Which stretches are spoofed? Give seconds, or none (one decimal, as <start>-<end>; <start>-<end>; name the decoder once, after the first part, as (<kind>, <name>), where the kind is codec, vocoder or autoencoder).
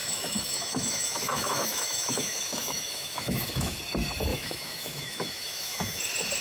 0.0-3.8 (autoencoder, DAC-VAE); 4.3-6.0